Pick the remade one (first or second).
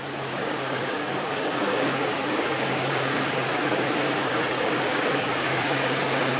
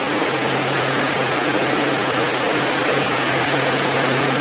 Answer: first